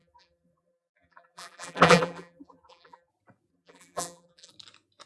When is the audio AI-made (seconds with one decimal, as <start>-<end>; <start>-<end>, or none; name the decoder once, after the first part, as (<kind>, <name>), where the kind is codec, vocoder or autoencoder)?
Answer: 0.0-3.1 (vocoder, BigVGAN v2); 3.5-4.5